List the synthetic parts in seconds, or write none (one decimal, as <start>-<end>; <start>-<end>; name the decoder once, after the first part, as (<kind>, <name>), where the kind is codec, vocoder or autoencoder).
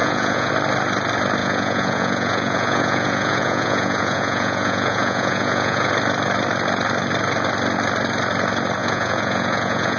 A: 0.0-0.5 (vocoder, Vocos); 1.4-5.9; 8.8-10.0